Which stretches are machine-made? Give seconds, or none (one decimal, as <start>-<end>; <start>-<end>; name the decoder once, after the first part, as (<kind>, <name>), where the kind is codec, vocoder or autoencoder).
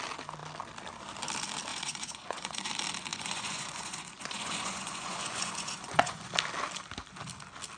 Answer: 1.7-2.7 (vocoder, Vocos); 3.1-6.3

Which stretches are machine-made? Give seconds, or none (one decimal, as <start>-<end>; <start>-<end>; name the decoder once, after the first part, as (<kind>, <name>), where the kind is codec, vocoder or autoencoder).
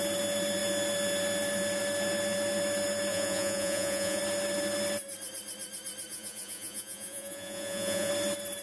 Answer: 3.1-4.2 (vocoder, Vocos); 6.1-8.1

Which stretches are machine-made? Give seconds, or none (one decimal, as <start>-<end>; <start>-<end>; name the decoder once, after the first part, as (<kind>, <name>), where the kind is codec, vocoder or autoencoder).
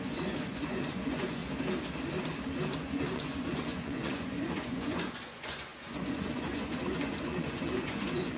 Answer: 0.0-1.4 (vocoder, Vocos); 2.8-8.4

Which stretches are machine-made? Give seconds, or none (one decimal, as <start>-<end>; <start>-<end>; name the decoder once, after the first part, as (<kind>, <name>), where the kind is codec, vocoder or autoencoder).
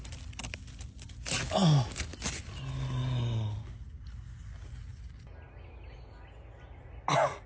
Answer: none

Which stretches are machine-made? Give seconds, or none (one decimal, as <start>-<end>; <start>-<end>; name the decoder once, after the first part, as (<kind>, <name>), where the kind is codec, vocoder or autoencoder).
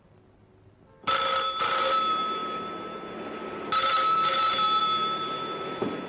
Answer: none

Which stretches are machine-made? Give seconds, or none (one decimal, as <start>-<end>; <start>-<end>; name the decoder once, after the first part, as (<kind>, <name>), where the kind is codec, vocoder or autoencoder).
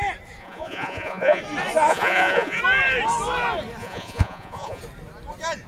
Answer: 0.4-1.4 (vocoder, Vocos); 1.9-2.6; 3.8-4.8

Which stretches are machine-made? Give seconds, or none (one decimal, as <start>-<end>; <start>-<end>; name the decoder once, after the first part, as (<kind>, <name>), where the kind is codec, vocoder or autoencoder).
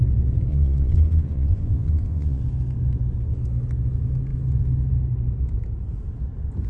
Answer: 0.5-2.4 (vocoder, Vocos)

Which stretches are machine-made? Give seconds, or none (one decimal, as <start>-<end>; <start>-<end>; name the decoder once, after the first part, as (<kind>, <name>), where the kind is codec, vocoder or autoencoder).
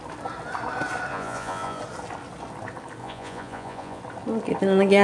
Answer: 1.1-1.8 (vocoder, Vocos); 3.0-4.0